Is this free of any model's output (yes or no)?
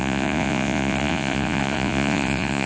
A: no